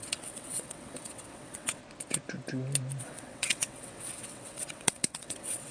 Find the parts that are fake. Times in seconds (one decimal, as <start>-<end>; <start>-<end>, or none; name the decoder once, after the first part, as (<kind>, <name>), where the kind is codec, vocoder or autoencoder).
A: 0.0-1.8 (vocoder, WaveNeXt); 3.0-5.7